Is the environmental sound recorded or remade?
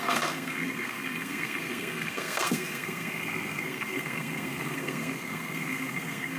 remade